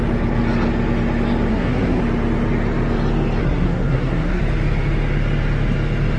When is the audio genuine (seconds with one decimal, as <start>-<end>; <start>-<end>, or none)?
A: 0.0-1.5; 2.0-3.4; 4.4-6.2